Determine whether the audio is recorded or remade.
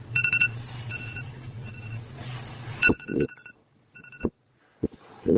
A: remade